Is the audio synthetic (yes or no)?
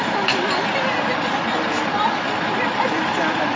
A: no